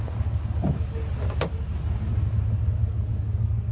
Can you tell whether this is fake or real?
real